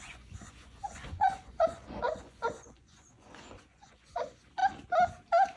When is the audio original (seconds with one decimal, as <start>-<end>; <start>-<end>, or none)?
4.6-5.6